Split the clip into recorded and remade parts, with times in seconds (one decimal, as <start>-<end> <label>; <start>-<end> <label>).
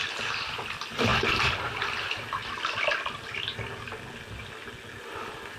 0.0-0.5 recorded; 0.5-2.4 remade; 2.4-5.0 recorded; 5.0-5.6 remade